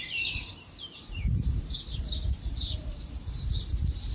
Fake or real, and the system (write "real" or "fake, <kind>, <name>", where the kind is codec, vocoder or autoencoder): fake, vocoder, BigVGAN v2